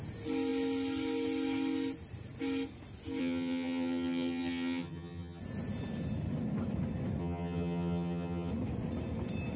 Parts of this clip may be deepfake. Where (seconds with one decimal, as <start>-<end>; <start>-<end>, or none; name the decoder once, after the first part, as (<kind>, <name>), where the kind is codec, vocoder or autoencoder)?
3.2-5.4 (vocoder, HiFi-GAN); 7.2-8.5